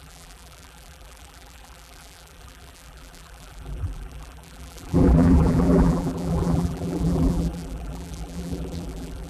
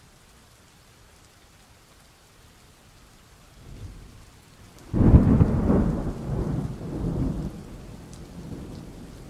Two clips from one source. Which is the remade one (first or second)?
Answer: first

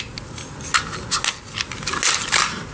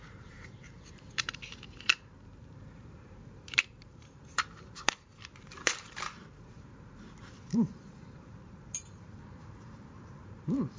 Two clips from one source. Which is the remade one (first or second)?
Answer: second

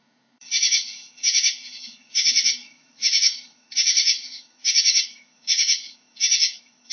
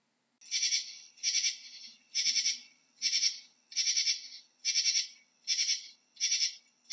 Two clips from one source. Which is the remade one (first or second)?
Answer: first